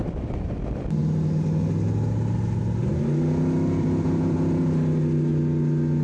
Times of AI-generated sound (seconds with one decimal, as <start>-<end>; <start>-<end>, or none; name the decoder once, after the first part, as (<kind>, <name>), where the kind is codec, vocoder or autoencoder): none